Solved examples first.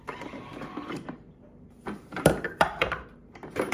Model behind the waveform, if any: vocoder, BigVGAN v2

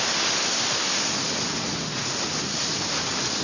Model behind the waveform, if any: none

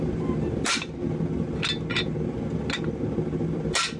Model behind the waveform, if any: none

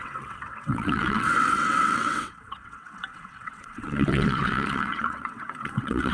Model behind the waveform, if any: vocoder, WaveNeXt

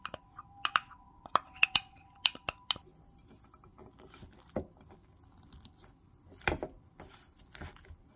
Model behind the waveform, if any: none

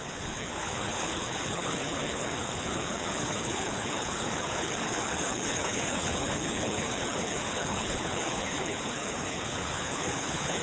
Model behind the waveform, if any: codec, HILCodec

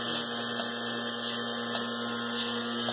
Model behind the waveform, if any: none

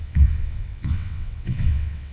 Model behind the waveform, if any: vocoder, WaveNeXt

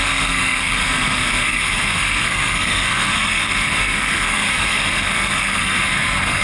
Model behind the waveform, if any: codec, SNAC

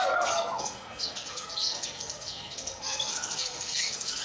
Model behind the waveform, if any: codec, SNAC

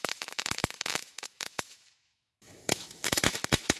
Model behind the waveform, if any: autoencoder, DAC-VAE